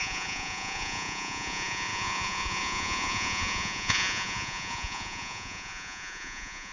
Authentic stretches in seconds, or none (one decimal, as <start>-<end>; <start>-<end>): none